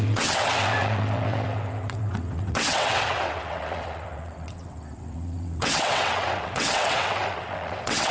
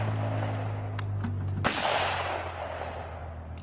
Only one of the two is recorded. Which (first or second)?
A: second